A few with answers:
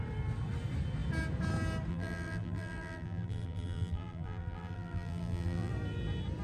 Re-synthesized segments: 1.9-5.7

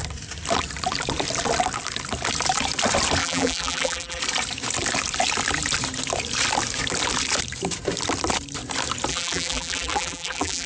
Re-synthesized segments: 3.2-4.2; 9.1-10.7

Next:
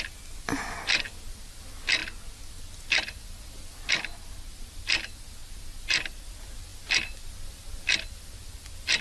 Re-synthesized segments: none

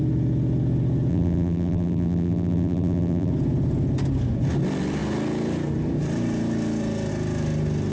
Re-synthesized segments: 1.1-3.3

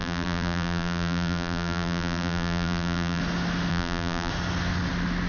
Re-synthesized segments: 0.0-3.2; 3.7-4.3

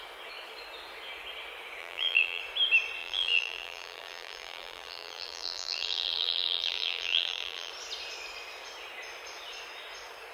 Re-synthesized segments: 1.8-2.4; 3.0-7.7

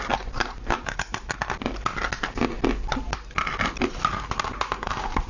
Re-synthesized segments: 0.0-1.4; 3.9-5.3

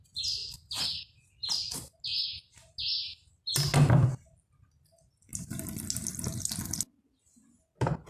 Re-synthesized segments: 0.4-1.0; 1.4-2.0